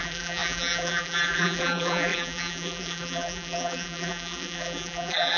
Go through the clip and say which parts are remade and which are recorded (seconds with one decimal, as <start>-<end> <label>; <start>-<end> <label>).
0.0-5.4 remade